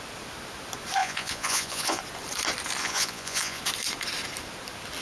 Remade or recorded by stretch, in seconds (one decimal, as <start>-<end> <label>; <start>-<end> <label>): 0.0-1.0 recorded; 1.0-2.0 remade; 2.0-2.8 recorded; 2.8-3.6 remade; 3.6-5.0 recorded